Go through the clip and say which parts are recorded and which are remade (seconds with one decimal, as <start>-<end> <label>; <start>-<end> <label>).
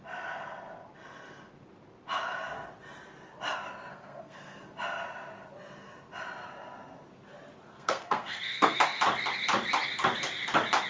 0.0-3.9 recorded; 3.9-4.6 remade; 4.6-7.7 recorded; 7.7-9.0 remade; 9.0-10.9 recorded